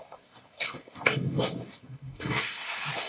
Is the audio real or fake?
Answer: fake